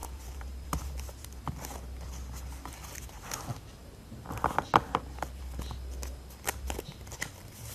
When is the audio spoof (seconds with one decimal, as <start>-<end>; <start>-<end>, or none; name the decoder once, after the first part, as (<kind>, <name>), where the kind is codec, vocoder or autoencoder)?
0.0-1.0 (vocoder, BigVGAN v2)